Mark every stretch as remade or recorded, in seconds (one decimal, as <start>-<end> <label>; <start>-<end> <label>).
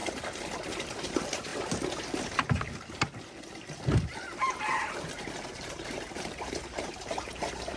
0.0-1.0 recorded; 1.0-1.5 remade; 1.5-4.6 recorded; 4.6-7.8 remade